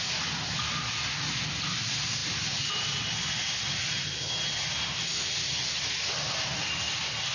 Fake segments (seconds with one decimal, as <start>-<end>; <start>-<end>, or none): none